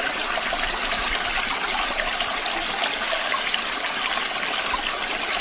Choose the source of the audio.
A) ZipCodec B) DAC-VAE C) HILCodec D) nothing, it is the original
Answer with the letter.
D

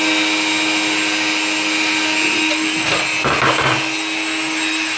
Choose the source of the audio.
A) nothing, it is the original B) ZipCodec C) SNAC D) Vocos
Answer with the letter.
A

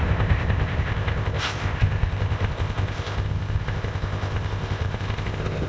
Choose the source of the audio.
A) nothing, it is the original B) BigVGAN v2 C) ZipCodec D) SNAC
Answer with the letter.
C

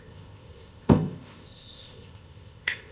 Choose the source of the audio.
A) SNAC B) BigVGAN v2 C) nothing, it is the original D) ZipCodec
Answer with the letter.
D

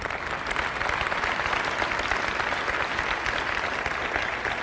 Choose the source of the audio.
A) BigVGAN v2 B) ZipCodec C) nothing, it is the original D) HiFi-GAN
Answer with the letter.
C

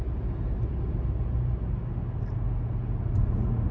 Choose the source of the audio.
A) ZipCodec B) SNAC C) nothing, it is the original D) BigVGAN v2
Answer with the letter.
C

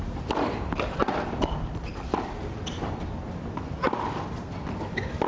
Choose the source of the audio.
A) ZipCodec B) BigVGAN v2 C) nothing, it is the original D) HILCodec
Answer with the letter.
C